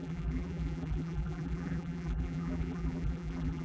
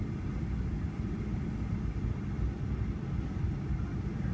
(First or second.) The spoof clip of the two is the first